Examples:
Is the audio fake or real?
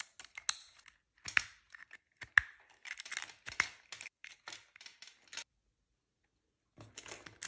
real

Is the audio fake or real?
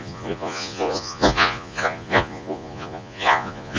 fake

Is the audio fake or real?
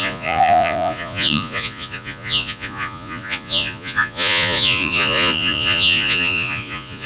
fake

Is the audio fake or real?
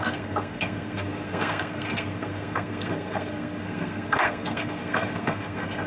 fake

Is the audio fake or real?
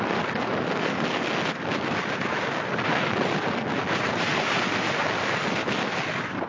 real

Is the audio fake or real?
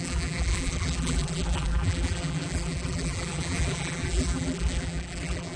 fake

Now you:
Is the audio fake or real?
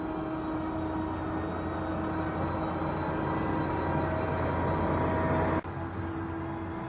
real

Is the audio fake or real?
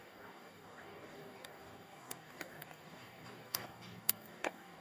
fake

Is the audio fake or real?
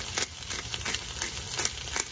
real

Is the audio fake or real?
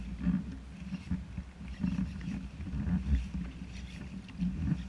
real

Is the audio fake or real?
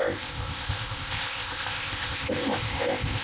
fake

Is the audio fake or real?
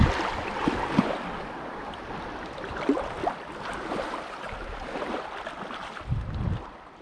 real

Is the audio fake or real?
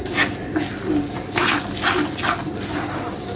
real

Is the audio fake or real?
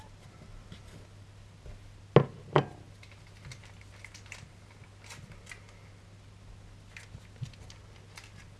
real